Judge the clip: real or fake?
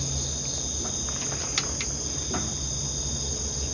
real